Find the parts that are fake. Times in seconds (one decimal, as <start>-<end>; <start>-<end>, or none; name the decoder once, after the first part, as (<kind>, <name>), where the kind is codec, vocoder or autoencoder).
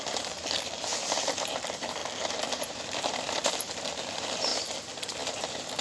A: 0.0-4.5 (vocoder, BigVGAN v2); 5.1-5.8